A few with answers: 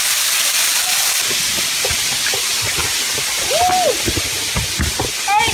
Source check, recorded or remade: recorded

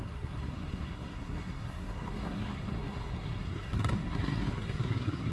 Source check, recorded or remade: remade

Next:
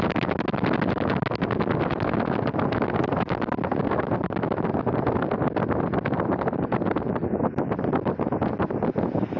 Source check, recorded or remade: recorded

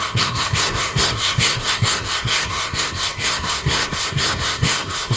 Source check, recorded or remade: remade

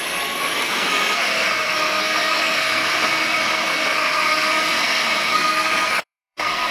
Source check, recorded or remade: remade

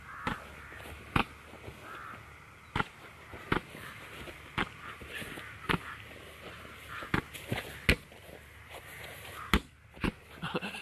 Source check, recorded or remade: recorded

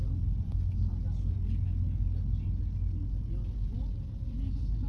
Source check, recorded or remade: recorded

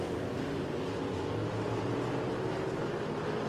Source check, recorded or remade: recorded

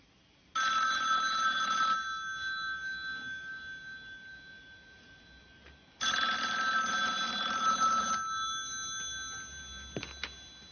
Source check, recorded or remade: recorded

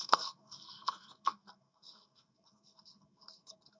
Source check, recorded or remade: remade